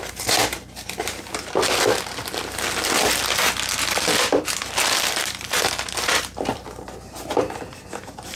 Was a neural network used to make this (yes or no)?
no